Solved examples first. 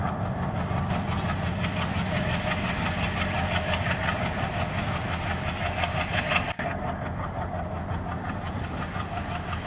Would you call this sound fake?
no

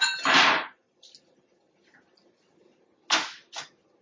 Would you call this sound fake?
no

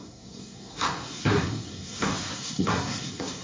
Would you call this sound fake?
yes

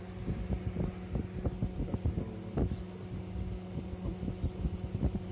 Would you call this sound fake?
no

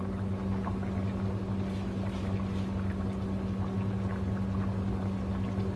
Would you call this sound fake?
no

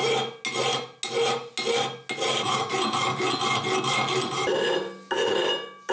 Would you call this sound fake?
no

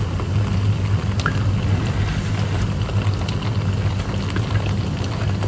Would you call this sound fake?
no